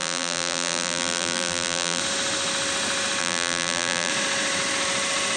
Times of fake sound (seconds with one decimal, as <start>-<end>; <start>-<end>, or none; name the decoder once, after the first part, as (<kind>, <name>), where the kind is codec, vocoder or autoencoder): 0.0-2.0 (vocoder, BigVGAN v2); 3.2-4.1